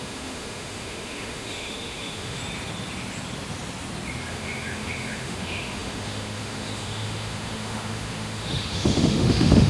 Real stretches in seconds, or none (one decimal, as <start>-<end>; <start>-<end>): 2.4-4.3